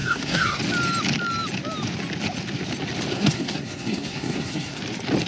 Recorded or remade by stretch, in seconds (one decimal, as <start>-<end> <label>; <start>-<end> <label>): 0.0-0.6 remade; 0.6-3.1 recorded; 3.1-4.8 remade; 4.8-5.3 recorded